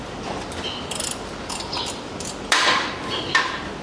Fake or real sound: real